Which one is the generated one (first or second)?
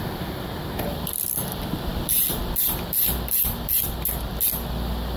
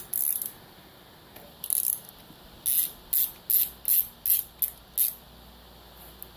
first